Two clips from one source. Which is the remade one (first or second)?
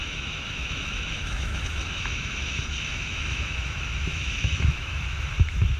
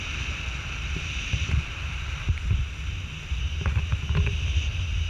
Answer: first